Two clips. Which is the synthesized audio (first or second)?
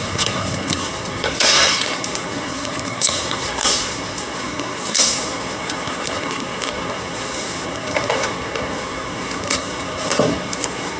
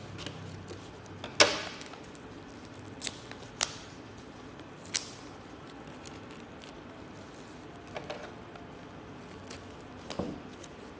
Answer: first